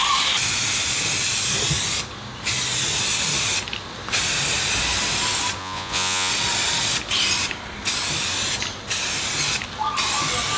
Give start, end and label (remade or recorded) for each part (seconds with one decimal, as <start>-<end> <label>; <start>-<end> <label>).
0.0-5.6 recorded; 5.6-6.3 remade; 6.3-10.6 recorded